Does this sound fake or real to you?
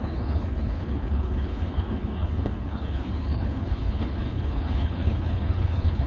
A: fake